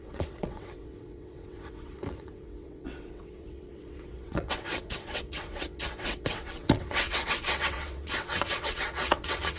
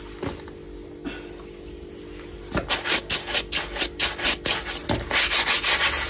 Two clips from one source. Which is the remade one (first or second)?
first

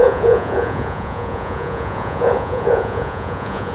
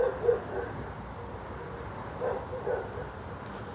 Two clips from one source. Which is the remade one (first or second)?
first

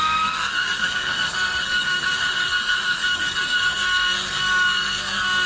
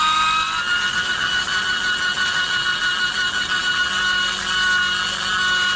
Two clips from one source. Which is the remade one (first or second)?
first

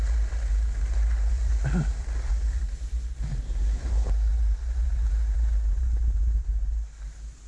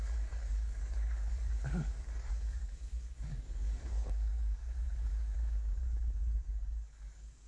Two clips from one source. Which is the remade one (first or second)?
second